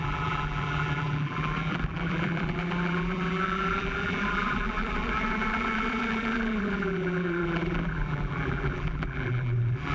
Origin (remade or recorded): remade